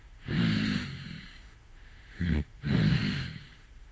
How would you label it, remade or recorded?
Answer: remade